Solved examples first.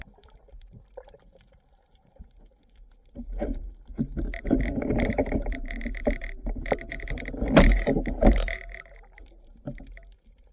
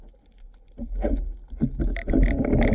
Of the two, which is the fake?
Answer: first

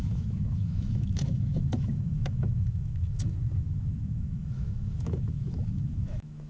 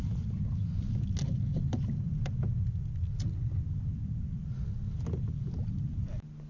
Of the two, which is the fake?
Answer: first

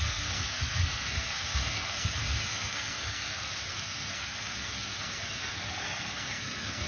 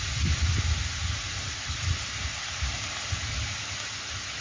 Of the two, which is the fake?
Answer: first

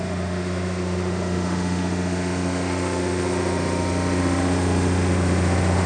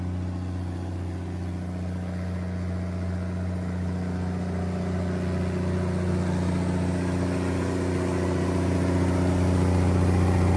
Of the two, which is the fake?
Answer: first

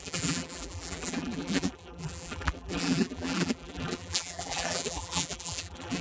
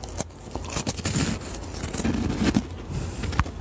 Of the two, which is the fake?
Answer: first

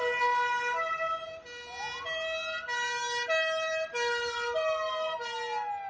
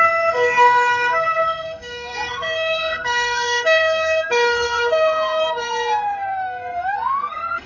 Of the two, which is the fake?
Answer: second